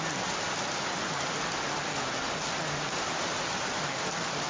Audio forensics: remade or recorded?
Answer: recorded